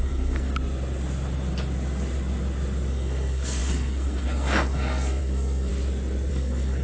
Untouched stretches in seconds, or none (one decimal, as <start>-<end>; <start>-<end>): 0.5-2.9; 5.7-6.3